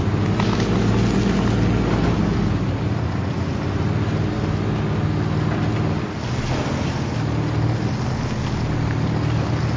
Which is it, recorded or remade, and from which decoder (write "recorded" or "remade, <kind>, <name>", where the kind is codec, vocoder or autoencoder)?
recorded